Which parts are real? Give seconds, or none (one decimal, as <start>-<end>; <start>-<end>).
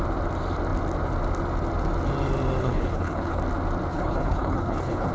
0.0-2.6; 3.4-3.9